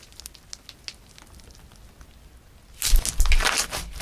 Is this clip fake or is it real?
real